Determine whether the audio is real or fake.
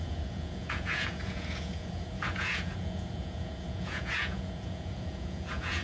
fake